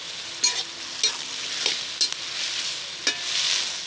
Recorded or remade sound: recorded